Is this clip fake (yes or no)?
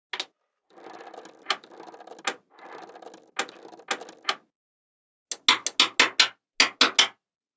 no